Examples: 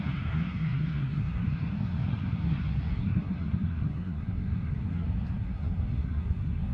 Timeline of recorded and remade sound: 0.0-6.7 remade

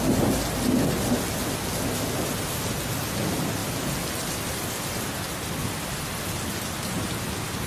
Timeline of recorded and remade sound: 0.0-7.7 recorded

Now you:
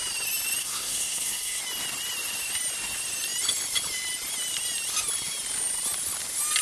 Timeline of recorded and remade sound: 0.0-0.6 recorded; 0.6-1.6 remade; 1.6-6.6 recorded